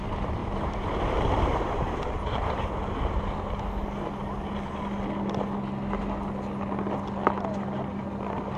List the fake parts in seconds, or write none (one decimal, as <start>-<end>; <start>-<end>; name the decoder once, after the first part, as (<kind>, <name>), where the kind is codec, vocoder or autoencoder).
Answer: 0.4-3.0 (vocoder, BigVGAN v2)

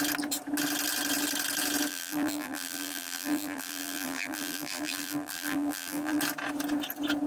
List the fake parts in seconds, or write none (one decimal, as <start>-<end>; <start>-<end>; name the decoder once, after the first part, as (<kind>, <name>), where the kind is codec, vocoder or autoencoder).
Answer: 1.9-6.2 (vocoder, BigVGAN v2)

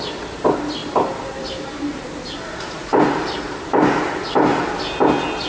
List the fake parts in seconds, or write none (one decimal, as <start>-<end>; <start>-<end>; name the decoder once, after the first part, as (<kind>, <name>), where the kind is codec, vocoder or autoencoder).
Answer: 0.8-4.1 (vocoder, BigVGAN v2)

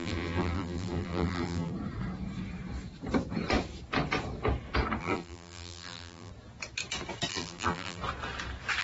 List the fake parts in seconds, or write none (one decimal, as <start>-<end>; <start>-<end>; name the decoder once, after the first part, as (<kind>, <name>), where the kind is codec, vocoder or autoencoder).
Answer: 0.0-1.7 (vocoder, BigVGAN v2); 5.0-6.3; 7.3-8.0

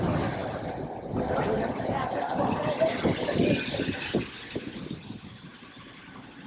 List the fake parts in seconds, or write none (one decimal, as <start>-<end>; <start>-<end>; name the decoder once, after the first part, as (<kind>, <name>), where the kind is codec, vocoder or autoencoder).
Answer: 5.5-6.5 (vocoder, BigVGAN v2)

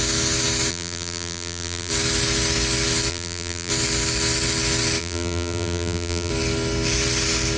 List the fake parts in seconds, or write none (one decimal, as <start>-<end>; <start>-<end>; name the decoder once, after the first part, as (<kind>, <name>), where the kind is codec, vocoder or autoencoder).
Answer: 0.7-1.9 (vocoder, BigVGAN v2); 3.1-3.7; 5.0-6.3

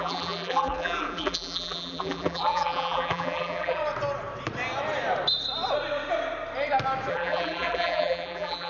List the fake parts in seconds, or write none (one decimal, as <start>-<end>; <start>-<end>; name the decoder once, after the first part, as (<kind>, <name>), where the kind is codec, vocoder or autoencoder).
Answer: 0.0-3.8 (vocoder, BigVGAN v2); 7.1-8.7

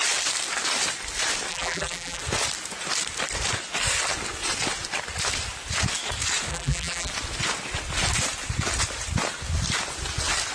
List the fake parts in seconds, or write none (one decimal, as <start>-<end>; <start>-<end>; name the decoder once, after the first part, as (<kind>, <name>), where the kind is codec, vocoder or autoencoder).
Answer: 1.5-2.2 (vocoder, BigVGAN v2); 6.5-7.1